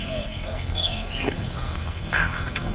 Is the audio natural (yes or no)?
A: no